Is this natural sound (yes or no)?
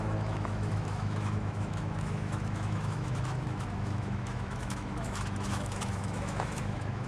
no